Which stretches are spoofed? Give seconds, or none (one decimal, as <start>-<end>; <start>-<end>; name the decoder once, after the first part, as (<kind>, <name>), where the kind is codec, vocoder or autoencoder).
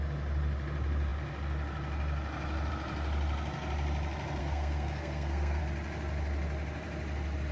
4.4-5.6 (codec, SNAC)